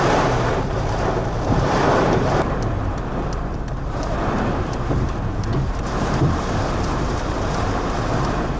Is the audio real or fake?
fake